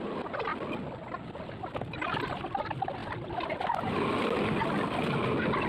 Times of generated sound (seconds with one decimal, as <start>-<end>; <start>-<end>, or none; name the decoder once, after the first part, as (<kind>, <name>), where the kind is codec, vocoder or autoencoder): none